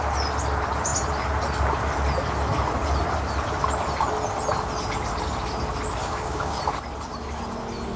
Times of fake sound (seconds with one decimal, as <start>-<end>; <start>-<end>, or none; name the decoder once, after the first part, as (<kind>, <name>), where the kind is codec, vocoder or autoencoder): 6.0-6.6 (codec, DAC)